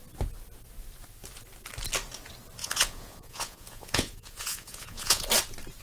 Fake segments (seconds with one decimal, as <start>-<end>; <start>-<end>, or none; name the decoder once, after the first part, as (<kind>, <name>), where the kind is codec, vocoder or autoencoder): 2.6-5.3 (vocoder, Vocos)